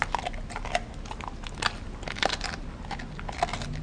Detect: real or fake real